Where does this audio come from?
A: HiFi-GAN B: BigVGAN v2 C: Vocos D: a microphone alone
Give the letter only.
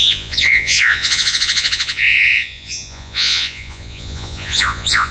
C